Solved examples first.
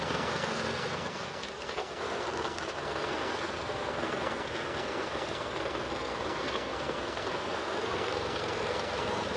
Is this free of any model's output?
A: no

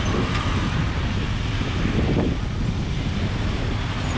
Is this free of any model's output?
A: yes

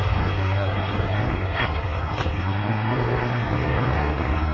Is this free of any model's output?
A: no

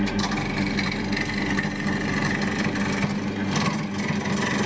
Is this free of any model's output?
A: yes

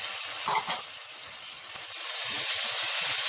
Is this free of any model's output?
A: yes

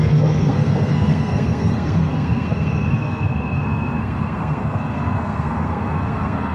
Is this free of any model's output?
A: no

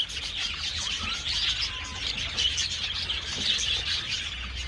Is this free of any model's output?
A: yes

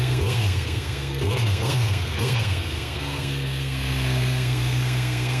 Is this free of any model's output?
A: no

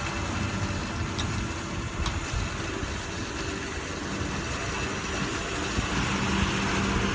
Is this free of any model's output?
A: yes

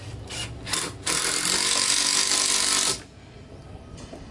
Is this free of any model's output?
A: yes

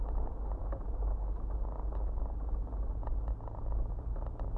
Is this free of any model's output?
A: yes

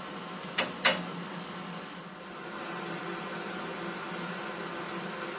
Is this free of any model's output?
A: yes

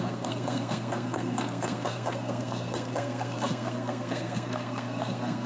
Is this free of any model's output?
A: no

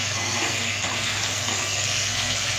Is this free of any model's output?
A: no